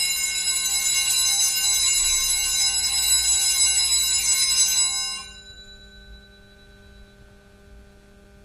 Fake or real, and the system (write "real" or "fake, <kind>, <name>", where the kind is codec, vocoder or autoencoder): real